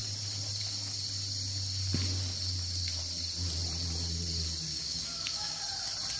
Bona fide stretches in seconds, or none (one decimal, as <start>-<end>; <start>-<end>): 0.0-4.7; 5.6-6.2

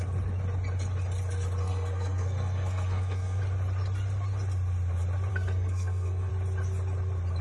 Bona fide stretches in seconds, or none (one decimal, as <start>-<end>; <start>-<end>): 0.0-1.6; 3.4-5.3; 6.3-7.4

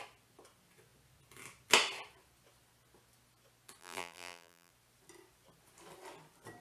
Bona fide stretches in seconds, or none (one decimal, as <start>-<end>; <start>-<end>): 0.0-3.8; 4.7-6.6

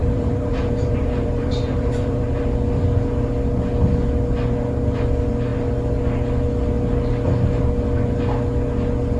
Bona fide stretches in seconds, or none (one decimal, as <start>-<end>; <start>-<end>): 2.4-9.2

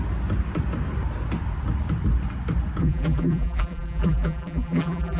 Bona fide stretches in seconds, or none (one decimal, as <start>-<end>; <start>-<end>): 0.0-2.8